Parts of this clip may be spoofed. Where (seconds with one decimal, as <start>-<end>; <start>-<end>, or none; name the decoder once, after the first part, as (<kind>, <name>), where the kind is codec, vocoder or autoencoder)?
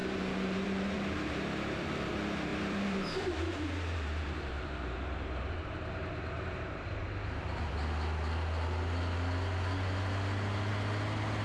0.0-2.1 (vocoder, BigVGAN v2); 2.5-7.7